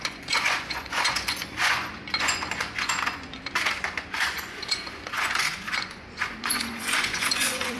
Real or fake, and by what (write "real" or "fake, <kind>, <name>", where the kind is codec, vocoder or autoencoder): fake, vocoder, Vocos